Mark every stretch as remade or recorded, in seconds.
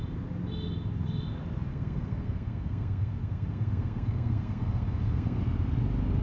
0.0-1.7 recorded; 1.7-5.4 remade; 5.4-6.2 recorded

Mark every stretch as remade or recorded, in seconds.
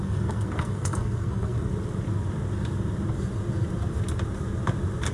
0.0-1.7 remade; 1.7-5.1 recorded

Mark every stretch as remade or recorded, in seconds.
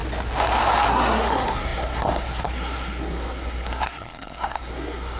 0.0-0.9 recorded; 0.9-5.2 remade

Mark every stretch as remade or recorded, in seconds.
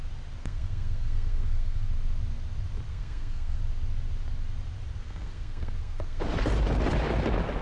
0.0-0.4 recorded; 0.4-1.9 remade; 1.9-2.9 recorded; 2.9-3.6 remade; 3.6-5.0 recorded; 5.0-6.2 remade; 6.2-7.6 recorded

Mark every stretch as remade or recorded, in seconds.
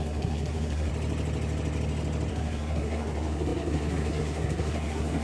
0.0-0.9 remade; 0.9-2.3 recorded; 2.3-5.2 remade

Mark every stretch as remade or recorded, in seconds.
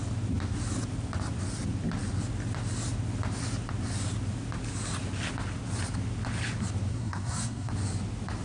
0.0-6.9 recorded; 6.9-7.7 remade; 7.7-8.4 recorded